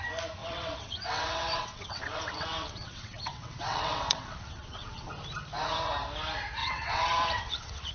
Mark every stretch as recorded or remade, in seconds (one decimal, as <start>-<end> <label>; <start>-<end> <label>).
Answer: 0.0-0.4 recorded; 0.4-5.1 remade; 5.1-6.6 recorded; 6.6-7.9 remade